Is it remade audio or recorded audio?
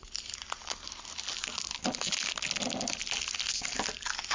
recorded